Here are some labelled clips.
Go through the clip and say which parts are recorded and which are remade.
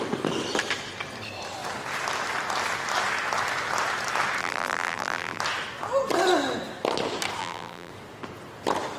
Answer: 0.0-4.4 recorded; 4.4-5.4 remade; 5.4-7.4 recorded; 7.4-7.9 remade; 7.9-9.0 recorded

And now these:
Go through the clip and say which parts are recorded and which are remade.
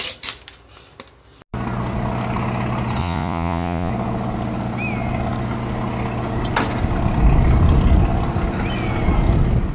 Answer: 0.0-3.0 recorded; 3.0-3.9 remade; 3.9-9.7 recorded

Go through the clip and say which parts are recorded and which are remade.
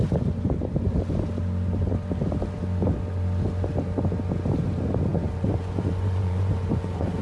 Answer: 0.0-5.1 recorded; 5.1-7.2 remade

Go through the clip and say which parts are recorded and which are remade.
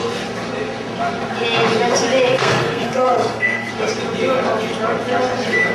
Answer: 0.0-2.3 recorded; 2.3-3.7 remade; 3.7-5.7 recorded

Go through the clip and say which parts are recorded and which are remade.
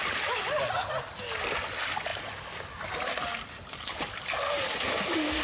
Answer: 0.0-5.4 recorded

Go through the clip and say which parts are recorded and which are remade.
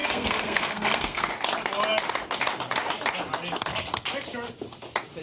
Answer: 0.0-1.3 remade; 1.3-5.2 recorded